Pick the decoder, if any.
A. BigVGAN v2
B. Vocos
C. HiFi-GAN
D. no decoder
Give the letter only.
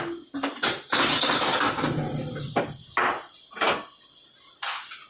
D